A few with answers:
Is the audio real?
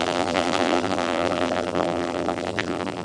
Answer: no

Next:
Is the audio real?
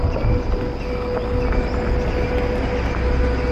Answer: yes